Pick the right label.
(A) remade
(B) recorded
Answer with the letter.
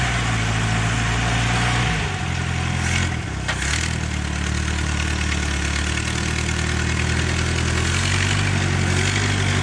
B